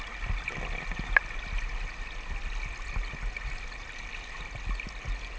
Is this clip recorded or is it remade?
recorded